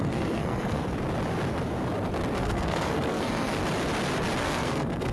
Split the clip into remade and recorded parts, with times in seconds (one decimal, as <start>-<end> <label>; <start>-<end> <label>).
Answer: 0.0-0.8 remade; 0.8-2.4 recorded; 2.4-3.6 remade; 3.6-4.4 recorded; 4.4-5.1 remade